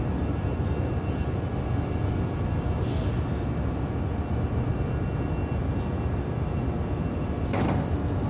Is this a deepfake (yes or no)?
no